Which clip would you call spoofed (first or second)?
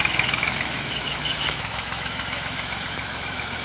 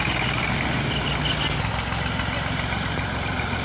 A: first